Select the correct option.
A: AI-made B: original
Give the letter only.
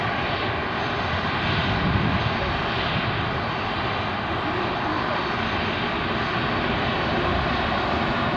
B